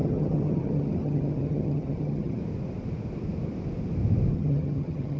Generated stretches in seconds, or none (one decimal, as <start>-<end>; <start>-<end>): 0.0-2.4; 4.3-5.2